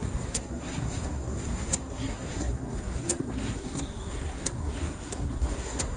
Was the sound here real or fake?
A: fake